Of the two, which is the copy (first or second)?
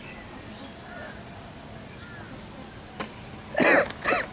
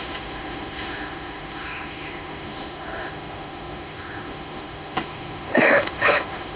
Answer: second